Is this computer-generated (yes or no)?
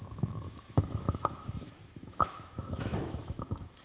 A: yes